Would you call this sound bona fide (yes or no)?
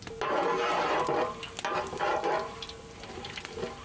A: yes